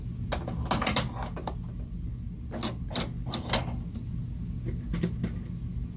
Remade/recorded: recorded